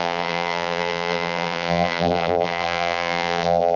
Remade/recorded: remade